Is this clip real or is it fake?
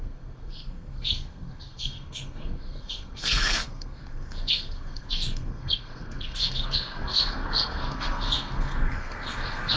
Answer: fake